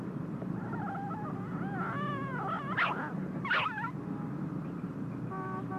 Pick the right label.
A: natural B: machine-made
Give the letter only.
A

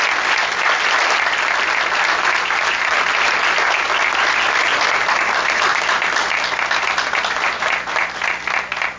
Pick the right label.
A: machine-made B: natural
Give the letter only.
B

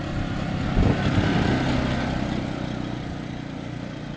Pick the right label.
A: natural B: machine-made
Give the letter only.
A